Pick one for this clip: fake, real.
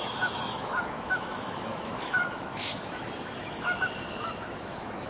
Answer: fake